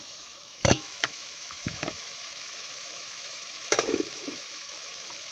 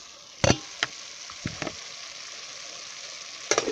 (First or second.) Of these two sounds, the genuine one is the second